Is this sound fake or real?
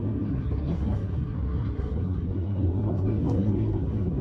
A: fake